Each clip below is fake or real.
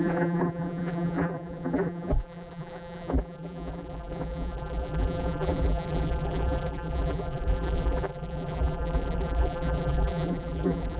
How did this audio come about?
fake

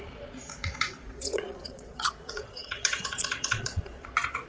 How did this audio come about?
fake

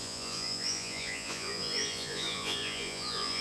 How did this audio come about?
fake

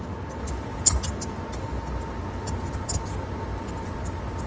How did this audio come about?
real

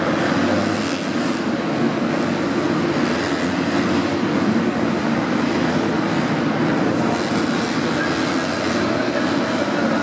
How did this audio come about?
real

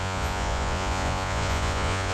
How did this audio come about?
fake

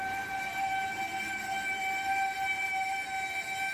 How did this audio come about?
real